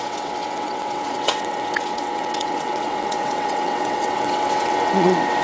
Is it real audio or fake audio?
fake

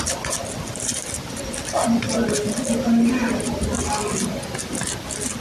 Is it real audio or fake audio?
fake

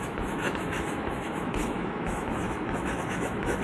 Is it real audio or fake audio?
fake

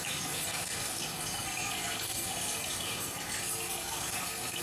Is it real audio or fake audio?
fake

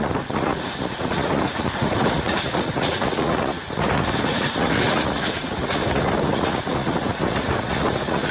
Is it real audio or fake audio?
fake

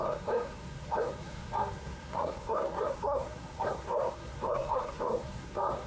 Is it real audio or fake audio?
fake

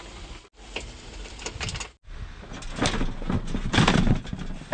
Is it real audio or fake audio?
real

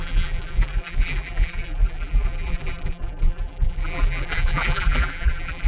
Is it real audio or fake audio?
fake